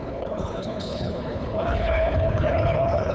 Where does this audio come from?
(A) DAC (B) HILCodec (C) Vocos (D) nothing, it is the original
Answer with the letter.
B